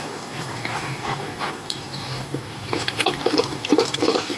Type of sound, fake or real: fake